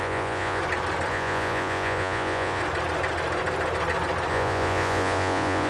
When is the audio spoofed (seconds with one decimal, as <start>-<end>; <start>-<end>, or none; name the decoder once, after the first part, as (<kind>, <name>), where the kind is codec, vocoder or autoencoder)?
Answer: 0.0-0.6 (vocoder, Vocos); 1.1-2.6; 4.3-5.7